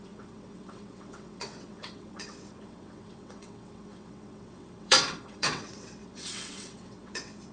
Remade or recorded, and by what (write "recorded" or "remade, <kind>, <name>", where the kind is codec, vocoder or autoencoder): remade, vocoder, WaveNeXt